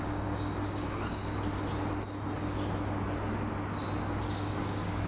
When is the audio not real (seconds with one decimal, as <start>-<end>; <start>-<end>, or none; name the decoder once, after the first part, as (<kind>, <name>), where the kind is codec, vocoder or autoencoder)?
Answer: 0.0-1.2 (codec, DAC); 4.3-5.1